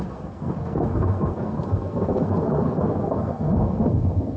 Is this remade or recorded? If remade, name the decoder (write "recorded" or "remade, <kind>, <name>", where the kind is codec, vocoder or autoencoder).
remade, codec, SNAC